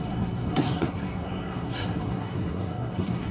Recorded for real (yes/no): no